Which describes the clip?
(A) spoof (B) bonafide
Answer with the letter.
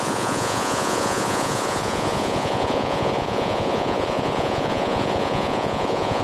A